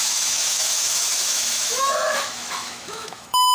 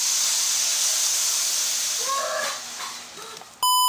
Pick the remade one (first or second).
first